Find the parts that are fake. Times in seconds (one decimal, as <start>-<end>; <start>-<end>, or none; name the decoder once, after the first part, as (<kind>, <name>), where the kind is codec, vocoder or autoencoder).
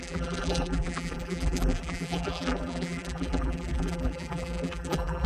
0.0-5.3 (vocoder, BigVGAN v2)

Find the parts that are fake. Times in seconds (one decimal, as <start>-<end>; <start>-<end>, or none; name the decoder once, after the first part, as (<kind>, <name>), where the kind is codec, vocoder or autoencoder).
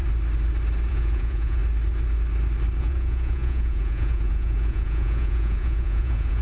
0.9-1.6 (vocoder, Vocos); 2.8-6.4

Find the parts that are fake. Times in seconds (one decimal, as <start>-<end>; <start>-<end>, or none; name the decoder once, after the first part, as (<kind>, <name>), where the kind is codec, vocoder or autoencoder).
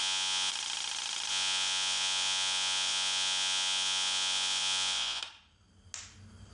0.0-0.5 (vocoder, Vocos); 1.3-5.2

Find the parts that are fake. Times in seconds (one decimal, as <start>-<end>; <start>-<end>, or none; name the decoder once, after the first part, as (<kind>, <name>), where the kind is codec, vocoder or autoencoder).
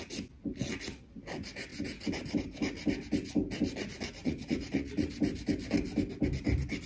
4.2-5.1 (vocoder, Vocos)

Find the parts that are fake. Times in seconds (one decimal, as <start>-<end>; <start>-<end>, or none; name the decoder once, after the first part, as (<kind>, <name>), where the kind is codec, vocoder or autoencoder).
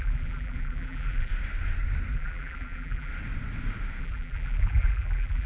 0.0-1.3 (vocoder, BigVGAN v2); 2.1-3.1; 4.0-5.5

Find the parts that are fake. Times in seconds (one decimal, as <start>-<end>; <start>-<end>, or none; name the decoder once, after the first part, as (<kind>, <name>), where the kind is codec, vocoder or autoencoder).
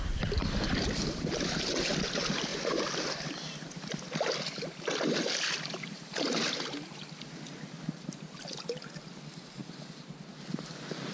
none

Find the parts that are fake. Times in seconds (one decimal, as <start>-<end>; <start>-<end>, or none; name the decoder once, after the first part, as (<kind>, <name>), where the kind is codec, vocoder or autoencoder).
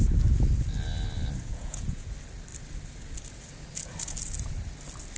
1.5-2.1 (vocoder, Vocos)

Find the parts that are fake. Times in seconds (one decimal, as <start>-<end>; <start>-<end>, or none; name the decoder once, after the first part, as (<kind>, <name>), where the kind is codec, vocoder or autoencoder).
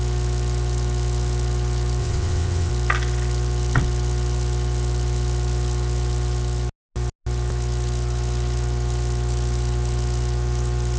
2.0-2.7 (vocoder, WaveNeXt)